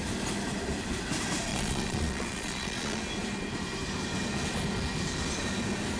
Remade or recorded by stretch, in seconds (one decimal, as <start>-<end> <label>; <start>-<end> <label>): 0.0-1.5 recorded; 1.5-3.0 remade; 3.0-6.0 recorded